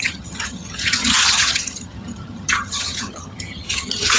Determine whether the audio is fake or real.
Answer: fake